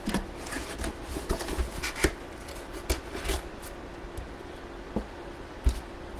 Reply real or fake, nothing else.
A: real